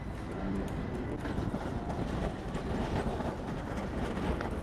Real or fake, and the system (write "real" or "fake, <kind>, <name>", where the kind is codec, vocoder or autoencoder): fake, vocoder, BigVGAN v2